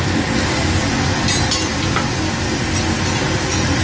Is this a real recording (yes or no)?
yes